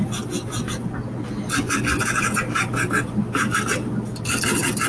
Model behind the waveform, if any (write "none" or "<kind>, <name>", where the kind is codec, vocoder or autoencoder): none